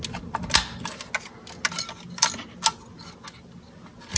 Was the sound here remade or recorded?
recorded